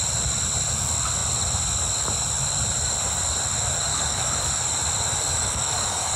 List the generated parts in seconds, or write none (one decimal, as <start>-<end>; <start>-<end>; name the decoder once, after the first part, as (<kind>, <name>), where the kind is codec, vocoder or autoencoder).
3.9-4.5 (codec, DAC); 5.3-6.2